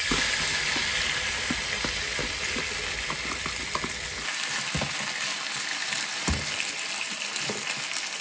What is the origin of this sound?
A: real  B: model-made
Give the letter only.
A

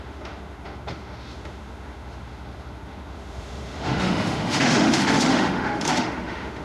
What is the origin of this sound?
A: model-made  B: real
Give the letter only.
A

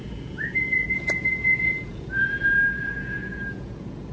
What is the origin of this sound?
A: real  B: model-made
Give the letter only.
B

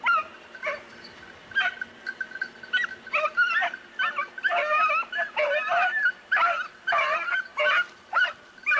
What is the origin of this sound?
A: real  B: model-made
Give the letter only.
A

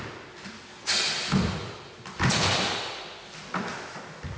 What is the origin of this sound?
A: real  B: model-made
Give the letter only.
A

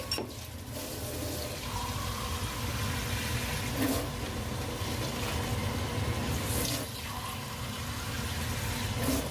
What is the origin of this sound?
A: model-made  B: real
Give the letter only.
B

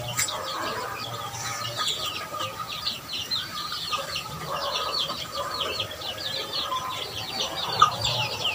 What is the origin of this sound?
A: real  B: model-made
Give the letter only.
B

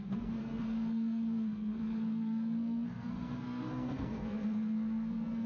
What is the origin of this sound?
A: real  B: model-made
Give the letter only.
B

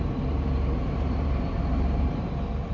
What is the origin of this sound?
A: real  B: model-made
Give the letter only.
B